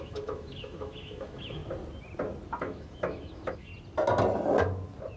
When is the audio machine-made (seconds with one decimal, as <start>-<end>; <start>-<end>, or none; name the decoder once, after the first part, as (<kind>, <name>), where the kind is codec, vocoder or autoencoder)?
0.0-1.6 (autoencoder, DAC-VAE); 2.6-3.7